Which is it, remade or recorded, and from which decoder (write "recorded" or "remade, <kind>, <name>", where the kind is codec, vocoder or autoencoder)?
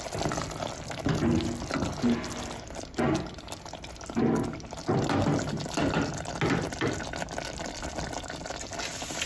recorded